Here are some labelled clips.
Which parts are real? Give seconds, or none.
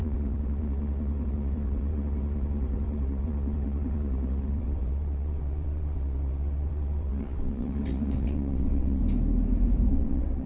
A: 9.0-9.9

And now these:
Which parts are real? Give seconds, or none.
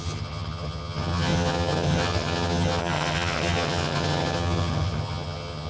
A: none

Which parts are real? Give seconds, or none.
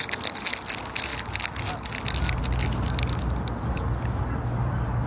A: 0.0-5.1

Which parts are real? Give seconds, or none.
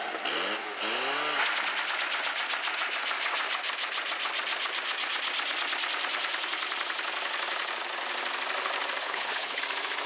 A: 0.0-9.0; 9.6-10.1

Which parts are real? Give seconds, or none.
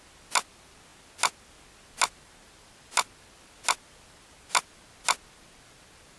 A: 0.0-6.2